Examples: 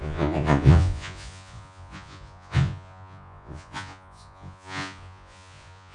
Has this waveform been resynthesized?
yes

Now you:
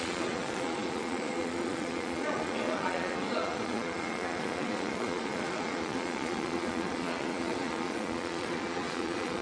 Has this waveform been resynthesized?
yes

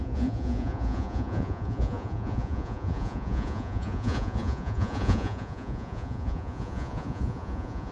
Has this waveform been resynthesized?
yes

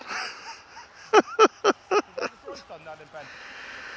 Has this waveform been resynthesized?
no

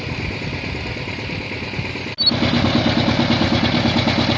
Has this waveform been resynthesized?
no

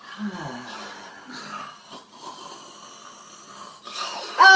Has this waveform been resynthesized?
no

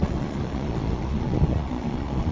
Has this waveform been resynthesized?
yes